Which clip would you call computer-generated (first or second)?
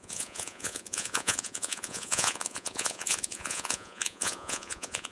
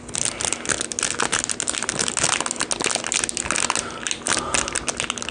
first